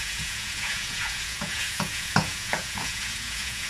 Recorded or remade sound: remade